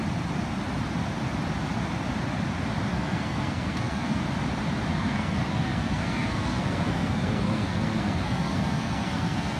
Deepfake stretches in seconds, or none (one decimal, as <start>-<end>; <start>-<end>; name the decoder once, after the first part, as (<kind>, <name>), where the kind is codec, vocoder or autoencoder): 2.9-4.2 (codec, SNAC); 4.9-9.6